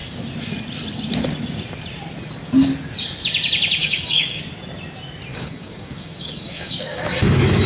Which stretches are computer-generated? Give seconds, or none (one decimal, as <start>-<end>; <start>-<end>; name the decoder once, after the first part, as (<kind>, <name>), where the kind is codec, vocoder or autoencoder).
3.8-4.4 (codec, DAC); 5.3-7.7